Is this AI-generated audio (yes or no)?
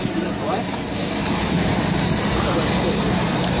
yes